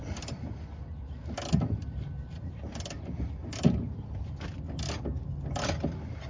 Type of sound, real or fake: real